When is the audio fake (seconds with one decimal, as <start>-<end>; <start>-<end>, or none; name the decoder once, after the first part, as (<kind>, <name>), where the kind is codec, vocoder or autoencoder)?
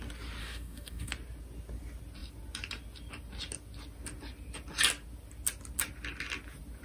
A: 0.4-1.1 (codec, DAC)